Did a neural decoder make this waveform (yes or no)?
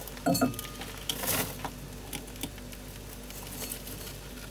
no